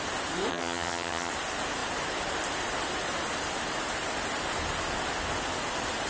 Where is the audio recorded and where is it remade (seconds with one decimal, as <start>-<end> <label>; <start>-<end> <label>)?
0.0-0.5 recorded; 0.5-1.3 remade; 1.3-6.1 recorded